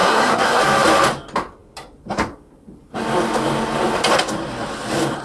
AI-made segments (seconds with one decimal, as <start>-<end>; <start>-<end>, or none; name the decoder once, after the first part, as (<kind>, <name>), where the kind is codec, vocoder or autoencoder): 0.0-0.6 (codec, SNAC)